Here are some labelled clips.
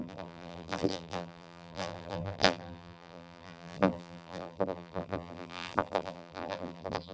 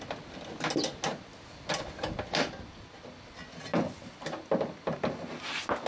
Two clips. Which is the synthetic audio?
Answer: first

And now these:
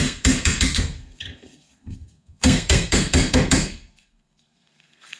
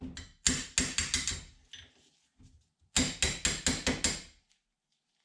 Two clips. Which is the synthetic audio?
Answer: first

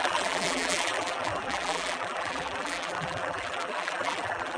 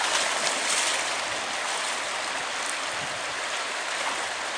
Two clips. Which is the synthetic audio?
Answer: first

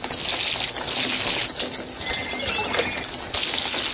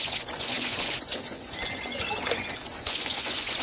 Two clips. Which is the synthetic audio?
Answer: second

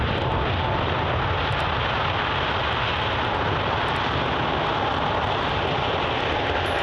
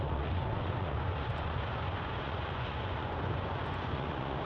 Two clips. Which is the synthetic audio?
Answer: second